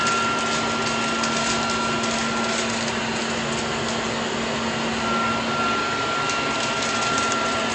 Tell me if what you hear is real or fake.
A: real